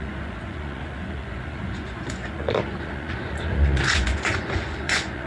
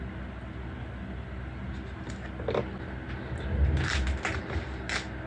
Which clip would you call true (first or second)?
second